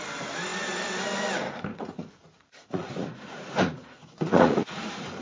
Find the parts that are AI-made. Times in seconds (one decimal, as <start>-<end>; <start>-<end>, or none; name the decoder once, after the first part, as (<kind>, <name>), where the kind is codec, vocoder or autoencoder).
1.7-4.8 (vocoder, Vocos)